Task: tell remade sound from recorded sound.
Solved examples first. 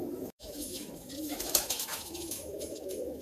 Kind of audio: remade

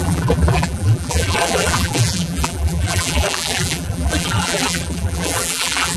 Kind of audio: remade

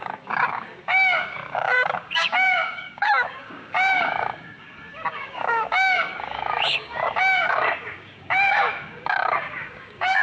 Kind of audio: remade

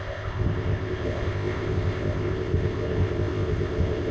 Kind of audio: remade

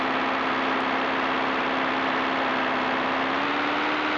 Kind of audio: recorded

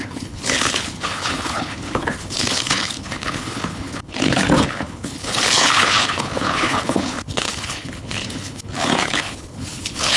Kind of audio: remade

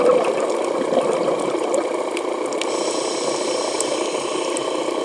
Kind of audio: recorded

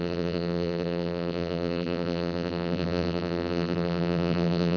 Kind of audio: remade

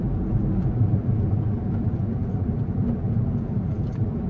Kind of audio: remade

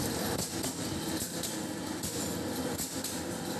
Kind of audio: recorded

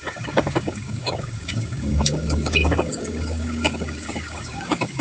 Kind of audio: remade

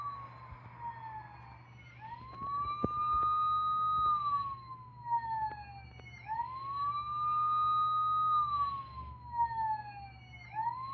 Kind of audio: recorded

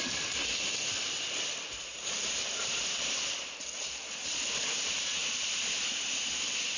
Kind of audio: remade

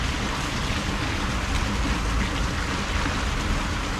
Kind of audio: recorded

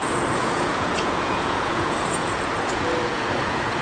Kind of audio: remade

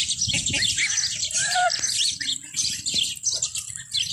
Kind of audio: remade